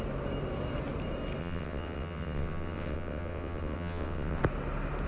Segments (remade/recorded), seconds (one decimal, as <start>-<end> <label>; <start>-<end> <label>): 0.0-1.4 recorded; 1.4-4.4 remade; 4.4-5.1 recorded